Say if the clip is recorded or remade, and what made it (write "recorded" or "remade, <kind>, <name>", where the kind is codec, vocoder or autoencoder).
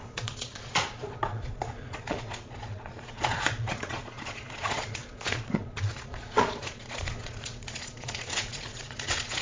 remade, vocoder, Vocos